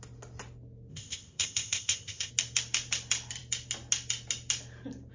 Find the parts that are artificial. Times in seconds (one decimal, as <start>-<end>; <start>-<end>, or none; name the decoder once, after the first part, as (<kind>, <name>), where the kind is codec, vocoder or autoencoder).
0.9-2.3 (codec, ZipCodec)

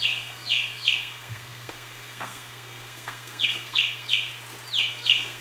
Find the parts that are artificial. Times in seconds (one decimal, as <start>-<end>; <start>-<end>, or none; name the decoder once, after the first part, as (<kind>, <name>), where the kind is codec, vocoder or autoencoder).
0.0-4.3 (codec, SNAC); 4.9-5.4

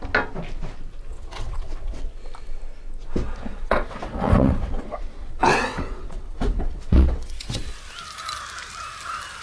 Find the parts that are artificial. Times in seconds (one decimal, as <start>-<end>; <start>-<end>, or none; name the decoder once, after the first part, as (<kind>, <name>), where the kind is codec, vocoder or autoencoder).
1.1-2.0 (vocoder, WaveNeXt); 3.5-7.6

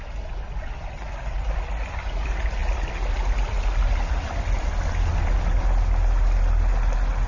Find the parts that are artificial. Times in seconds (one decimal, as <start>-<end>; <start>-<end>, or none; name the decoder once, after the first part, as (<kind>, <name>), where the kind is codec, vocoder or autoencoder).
none

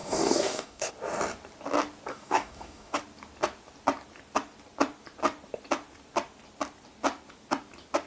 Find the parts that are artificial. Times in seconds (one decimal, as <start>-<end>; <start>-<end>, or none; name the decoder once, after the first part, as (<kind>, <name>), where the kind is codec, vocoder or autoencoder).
0.0-0.9 (codec, DAC); 2.1-3.0

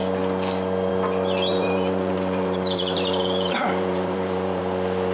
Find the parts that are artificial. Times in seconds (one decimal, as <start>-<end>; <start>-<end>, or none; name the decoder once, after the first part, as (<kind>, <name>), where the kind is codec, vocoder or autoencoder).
1.5-4.6 (vocoder, BigVGAN v2)

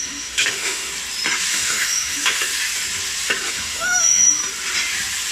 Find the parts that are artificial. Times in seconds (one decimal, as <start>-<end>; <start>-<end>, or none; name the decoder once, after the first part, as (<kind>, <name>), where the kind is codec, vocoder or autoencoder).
0.0-0.9 (autoencoder, DAC-VAE); 1.5-2.5; 3.5-4.4